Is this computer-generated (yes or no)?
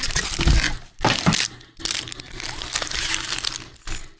no